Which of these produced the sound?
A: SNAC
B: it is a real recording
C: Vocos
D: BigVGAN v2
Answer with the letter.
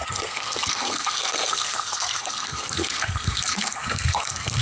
A